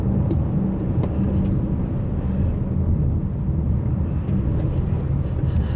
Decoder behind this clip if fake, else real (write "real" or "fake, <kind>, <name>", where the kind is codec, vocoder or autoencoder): real